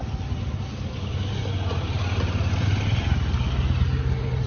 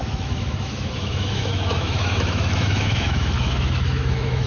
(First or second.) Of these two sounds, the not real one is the second